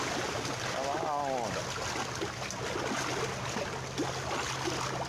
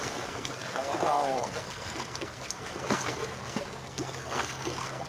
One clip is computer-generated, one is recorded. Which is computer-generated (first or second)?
second